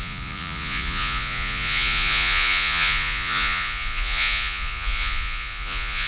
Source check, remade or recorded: remade